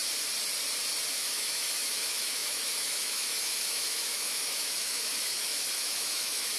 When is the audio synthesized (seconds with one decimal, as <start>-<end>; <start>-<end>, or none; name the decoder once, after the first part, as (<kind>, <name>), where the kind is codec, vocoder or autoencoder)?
1.1-6.6 (autoencoder, DAC-VAE)